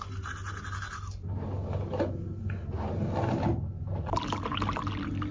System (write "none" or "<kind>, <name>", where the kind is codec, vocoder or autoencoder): none